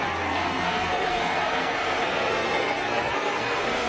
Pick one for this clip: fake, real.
fake